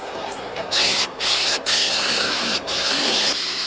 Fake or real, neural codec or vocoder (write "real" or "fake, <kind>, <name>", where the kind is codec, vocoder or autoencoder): fake, codec, SNAC